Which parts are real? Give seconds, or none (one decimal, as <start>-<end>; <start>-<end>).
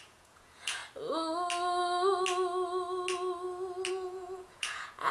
0.8-3.9